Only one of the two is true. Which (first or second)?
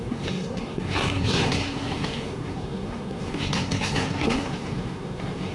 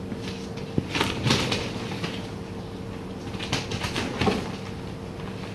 second